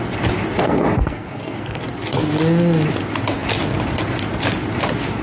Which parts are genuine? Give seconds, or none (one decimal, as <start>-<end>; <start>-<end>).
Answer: 0.0-0.6; 1.8-5.2

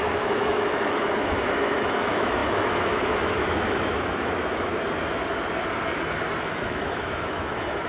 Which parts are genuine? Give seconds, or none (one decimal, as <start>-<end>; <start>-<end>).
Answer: 4.7-6.4

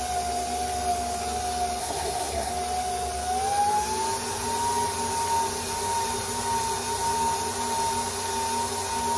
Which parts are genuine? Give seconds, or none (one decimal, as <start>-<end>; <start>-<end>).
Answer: 0.0-1.8; 2.5-9.2